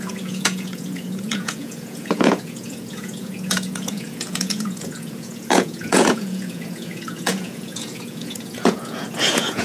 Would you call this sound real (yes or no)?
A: no